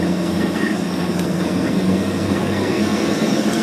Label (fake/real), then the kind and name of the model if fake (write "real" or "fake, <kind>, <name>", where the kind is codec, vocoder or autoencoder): fake, codec, SNAC